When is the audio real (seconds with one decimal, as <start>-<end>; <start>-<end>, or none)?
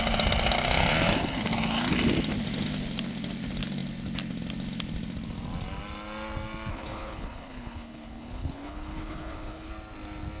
0.0-6.7; 9.7-10.4